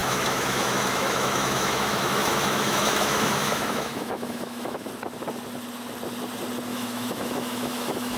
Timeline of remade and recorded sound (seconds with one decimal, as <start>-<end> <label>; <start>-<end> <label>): 0.0-4.9 remade; 4.9-6.7 recorded; 6.7-8.2 remade